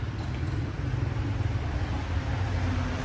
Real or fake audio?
real